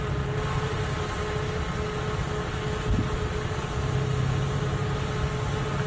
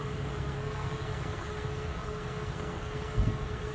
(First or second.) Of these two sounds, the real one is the first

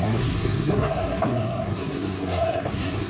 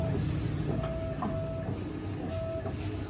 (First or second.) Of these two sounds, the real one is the second